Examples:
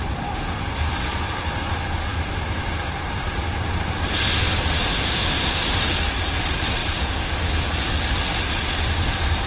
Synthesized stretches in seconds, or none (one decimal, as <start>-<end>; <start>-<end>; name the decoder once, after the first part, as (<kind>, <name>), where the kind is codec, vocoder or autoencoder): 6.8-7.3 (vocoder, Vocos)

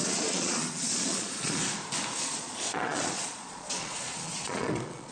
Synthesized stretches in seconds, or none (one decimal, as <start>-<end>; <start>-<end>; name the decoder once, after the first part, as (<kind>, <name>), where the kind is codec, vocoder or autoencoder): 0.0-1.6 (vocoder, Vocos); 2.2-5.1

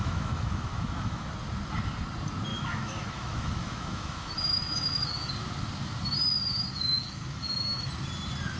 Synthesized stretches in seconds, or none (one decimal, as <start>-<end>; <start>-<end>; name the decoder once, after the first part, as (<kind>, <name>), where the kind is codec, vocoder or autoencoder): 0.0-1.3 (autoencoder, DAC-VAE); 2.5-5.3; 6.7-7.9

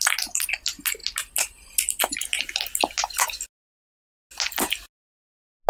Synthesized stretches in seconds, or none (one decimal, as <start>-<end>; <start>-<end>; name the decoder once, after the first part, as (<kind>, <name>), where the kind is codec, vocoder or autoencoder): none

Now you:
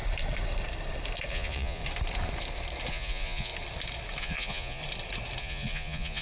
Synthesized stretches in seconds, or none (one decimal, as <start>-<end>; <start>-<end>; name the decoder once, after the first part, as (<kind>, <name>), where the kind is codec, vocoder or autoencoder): 1.3-1.8 (vocoder, Vocos); 2.9-3.5; 4.2-4.8; 5.4-6.2

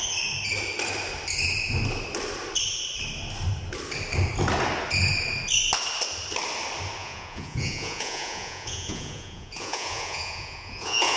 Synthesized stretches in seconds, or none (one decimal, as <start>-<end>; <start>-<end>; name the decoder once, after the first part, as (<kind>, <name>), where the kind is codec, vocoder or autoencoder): 7.0-11.2 (vocoder, Vocos)

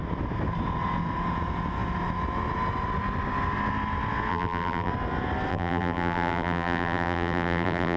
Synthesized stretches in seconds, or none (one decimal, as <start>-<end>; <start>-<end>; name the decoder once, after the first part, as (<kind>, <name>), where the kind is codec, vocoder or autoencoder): 4.3-4.9 (vocoder, BigVGAN v2); 5.5-8.0

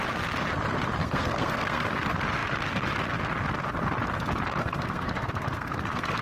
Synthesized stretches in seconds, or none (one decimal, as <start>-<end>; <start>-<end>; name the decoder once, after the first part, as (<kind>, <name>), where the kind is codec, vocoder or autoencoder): 1.0-2.0 (codec, SNAC); 4.6-6.2